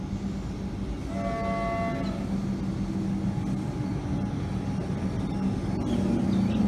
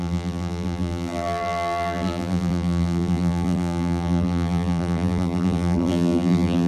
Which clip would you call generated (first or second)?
second